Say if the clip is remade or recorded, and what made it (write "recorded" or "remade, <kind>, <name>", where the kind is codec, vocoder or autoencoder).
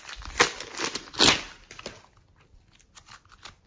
recorded